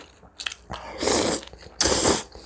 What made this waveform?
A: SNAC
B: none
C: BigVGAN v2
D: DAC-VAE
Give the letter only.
B